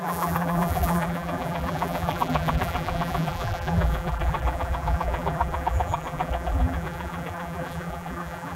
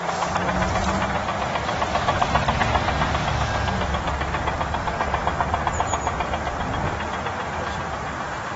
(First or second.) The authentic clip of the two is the second